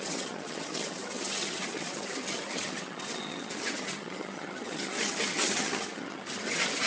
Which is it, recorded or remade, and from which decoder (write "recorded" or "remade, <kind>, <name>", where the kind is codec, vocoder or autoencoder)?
remade, vocoder, HiFi-GAN